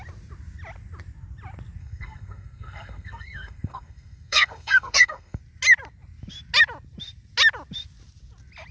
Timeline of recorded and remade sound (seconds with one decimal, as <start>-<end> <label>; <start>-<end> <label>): 0.0-1.8 recorded; 1.8-5.4 remade; 5.4-8.7 recorded